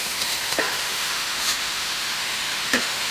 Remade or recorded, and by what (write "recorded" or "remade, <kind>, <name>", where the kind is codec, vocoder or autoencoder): remade, autoencoder, DAC-VAE